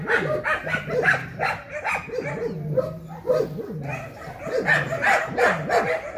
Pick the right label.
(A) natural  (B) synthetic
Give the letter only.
A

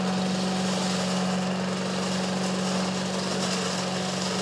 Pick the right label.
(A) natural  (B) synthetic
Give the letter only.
A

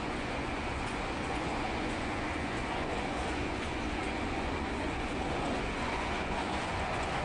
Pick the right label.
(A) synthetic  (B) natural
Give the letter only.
A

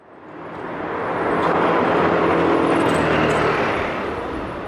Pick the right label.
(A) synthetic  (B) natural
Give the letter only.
B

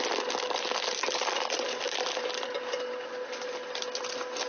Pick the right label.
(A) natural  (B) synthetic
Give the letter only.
A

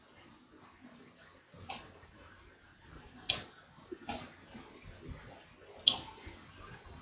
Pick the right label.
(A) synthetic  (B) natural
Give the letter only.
B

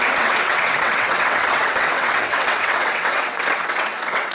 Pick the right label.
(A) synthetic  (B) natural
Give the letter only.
A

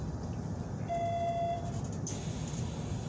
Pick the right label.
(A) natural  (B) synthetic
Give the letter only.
A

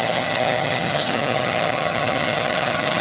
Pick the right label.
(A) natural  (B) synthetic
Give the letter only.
B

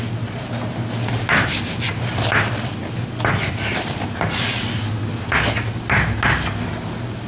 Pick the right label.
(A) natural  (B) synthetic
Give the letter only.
A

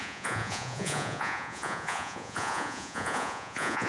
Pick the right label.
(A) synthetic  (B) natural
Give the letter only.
A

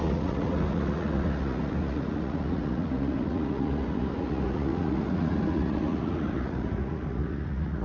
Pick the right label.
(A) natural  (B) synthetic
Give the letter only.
B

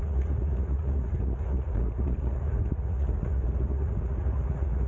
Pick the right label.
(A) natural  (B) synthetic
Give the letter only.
B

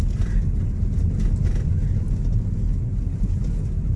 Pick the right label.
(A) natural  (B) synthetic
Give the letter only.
A